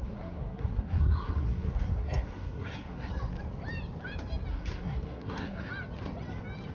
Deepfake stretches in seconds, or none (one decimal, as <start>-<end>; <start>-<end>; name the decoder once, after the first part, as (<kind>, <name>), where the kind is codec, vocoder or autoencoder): 0.0-3.1 (codec, SNAC); 4.5-5.7